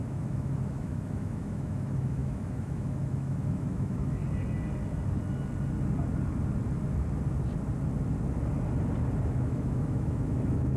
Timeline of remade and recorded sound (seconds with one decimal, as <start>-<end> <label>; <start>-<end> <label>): 0.0-4.2 remade; 4.2-9.3 recorded; 9.3-10.8 remade